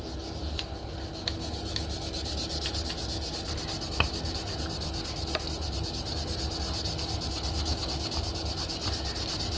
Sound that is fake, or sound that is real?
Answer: real